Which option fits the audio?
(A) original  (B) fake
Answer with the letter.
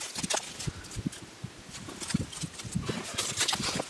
A